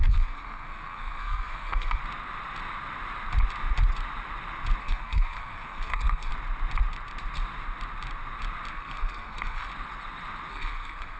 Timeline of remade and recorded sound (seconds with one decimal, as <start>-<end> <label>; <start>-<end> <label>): 0.0-2.0 remade; 2.0-4.8 recorded; 4.8-6.3 remade; 6.3-8.7 recorded; 8.7-9.7 remade; 9.7-10.5 recorded; 10.5-11.2 remade